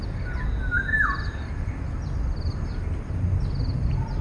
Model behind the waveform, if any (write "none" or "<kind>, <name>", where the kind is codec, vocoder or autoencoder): none